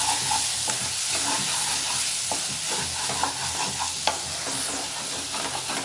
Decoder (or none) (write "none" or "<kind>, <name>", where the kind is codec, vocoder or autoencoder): none